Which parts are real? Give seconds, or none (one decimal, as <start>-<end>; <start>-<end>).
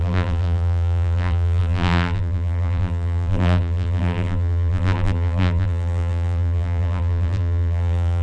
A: none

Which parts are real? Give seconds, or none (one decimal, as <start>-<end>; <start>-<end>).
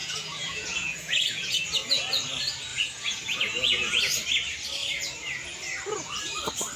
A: 1.9-2.7; 4.0-6.8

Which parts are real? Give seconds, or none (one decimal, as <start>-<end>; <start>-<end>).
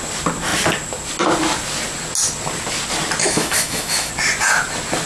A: 0.0-3.2; 4.1-5.1